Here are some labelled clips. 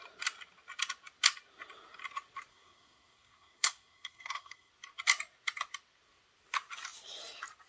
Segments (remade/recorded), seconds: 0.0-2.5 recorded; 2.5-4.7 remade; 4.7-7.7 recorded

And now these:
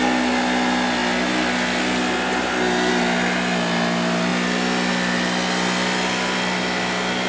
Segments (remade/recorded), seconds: 0.0-7.3 recorded

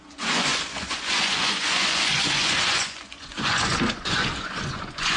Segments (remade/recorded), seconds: 0.0-5.2 remade

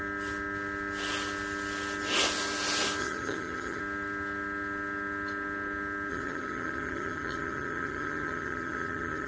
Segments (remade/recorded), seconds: 0.0-3.0 recorded; 3.0-3.8 remade; 3.8-6.1 recorded; 6.1-9.3 remade

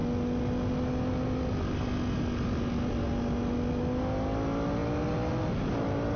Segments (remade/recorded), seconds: 0.0-6.2 recorded